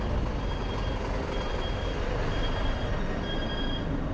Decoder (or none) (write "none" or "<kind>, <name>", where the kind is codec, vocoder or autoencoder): none